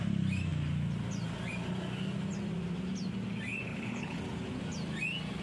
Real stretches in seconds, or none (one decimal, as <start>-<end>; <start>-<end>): 0.0-3.7; 4.2-5.4